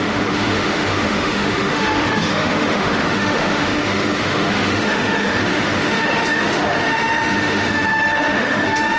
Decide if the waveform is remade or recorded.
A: remade